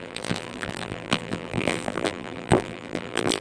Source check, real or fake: fake